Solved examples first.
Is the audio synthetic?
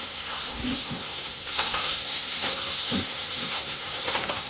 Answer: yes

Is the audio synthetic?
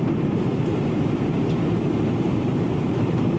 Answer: yes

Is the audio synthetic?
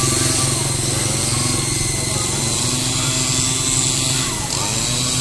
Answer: no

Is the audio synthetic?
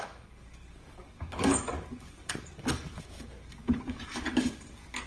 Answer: yes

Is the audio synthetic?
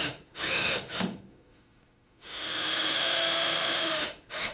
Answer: yes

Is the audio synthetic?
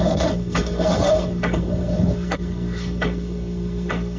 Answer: yes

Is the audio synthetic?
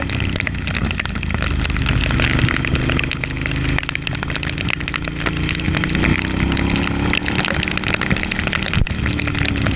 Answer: no